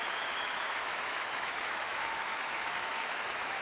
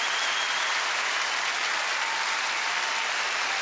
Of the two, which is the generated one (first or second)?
first